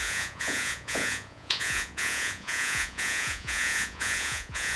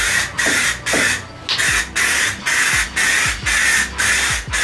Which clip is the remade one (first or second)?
first